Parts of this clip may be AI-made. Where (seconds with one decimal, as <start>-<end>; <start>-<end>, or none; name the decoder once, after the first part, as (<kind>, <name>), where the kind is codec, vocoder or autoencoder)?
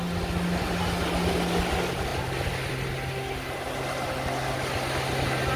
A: none